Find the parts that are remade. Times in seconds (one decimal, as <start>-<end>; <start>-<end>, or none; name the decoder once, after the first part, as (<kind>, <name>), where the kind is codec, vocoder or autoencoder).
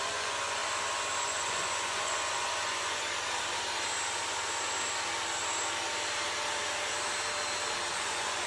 0.0-0.6 (vocoder, Vocos); 1.2-3.0; 7.9-8.5